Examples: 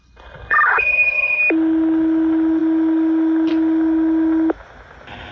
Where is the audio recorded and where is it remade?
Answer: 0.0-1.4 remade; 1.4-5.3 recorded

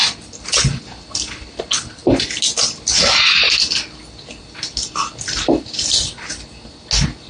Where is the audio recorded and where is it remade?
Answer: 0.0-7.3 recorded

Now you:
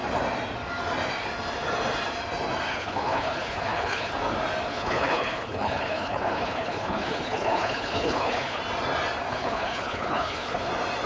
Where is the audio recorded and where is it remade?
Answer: 0.0-2.7 recorded; 2.7-4.1 remade; 4.1-4.7 recorded; 4.7-8.6 remade; 8.6-9.3 recorded; 9.3-10.7 remade; 10.7-11.1 recorded